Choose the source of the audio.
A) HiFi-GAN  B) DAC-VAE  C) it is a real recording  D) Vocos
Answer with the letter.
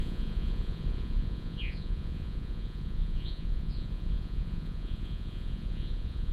D